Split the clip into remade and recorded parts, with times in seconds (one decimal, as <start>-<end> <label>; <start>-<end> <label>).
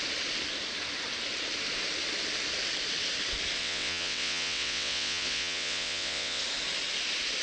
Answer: 0.0-3.6 recorded; 3.6-6.4 remade; 6.4-7.4 recorded